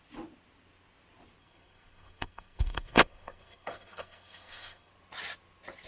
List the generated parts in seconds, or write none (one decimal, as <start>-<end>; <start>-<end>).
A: 1.4-4.9